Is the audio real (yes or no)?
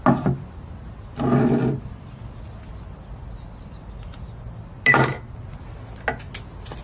yes